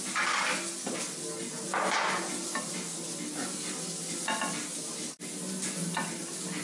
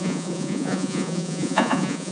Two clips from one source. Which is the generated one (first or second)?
second